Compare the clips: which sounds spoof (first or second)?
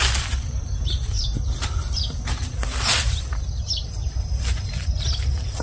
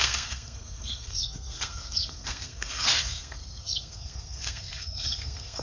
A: second